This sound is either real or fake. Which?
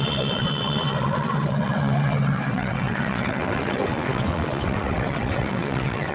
fake